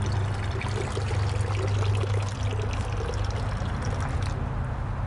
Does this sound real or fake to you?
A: real